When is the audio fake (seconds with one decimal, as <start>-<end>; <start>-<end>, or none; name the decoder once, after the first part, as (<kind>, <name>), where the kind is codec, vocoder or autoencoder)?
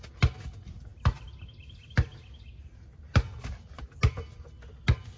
none